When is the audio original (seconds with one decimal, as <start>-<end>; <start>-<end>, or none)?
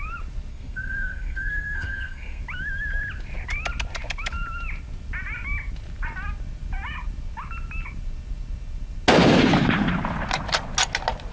0.0-0.5; 2.4-11.3